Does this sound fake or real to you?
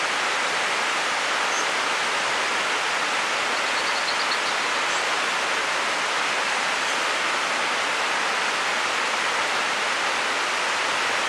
real